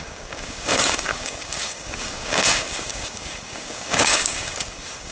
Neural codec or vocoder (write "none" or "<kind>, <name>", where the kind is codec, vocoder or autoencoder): codec, DAC